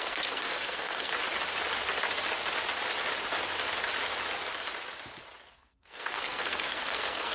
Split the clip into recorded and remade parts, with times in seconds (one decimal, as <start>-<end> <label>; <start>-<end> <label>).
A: 0.0-1.1 remade; 1.1-5.5 recorded; 5.5-7.3 remade